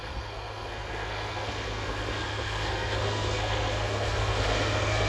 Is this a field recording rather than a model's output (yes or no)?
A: no